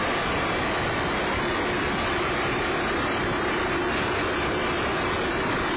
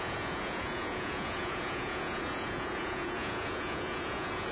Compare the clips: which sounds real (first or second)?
first